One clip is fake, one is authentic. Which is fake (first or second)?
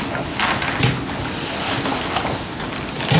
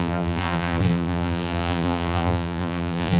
second